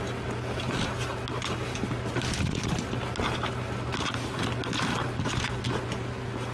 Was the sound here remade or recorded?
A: recorded